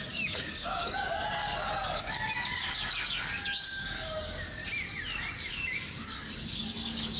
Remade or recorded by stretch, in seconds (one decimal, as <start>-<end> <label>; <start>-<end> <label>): 0.0-4.6 remade; 4.6-5.5 recorded; 5.5-7.2 remade